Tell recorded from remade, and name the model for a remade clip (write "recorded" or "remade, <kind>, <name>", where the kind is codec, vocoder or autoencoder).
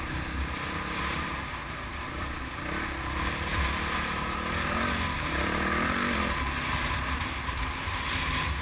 recorded